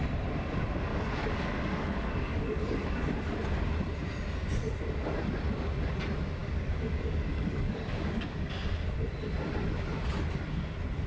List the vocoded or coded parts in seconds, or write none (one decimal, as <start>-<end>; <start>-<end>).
0.9-3.1; 6.4-8.5